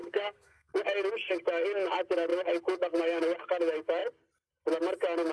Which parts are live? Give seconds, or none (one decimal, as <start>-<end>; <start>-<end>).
0.7-5.3